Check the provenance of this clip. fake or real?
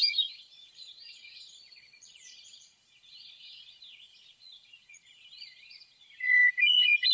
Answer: fake